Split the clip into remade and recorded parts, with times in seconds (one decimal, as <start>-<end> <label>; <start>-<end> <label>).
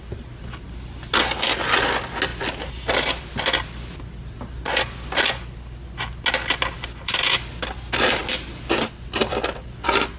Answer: 0.0-10.2 recorded